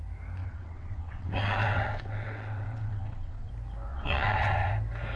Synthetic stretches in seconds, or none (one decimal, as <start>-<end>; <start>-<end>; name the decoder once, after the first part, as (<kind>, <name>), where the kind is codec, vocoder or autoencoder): 0.4-3.5 (vocoder, WaveNeXt); 3.9-4.7